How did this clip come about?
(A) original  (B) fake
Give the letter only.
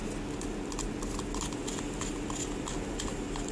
A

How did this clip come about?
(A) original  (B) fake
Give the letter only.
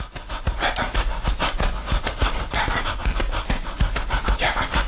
A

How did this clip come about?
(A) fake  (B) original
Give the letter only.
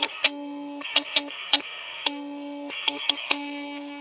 A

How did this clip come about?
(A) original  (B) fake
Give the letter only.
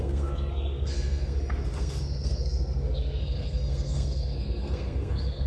B